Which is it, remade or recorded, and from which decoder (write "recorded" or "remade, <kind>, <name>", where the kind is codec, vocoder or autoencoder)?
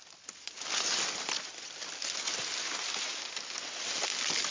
recorded